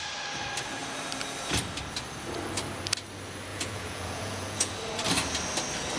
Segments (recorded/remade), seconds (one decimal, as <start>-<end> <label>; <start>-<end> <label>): 0.0-3.5 recorded; 3.5-4.7 remade; 4.7-6.0 recorded